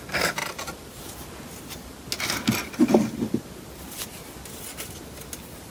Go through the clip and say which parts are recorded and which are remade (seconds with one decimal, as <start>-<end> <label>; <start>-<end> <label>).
0.0-0.4 remade; 0.4-3.8 recorded; 3.8-5.7 remade